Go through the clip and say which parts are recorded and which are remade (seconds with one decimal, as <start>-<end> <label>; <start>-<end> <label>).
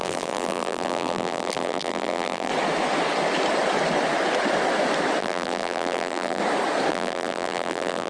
0.0-2.5 remade; 2.5-5.2 recorded; 5.2-6.4 remade; 6.4-6.9 recorded; 6.9-8.1 remade